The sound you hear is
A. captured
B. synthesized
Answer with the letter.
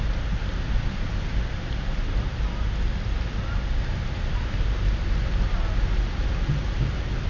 A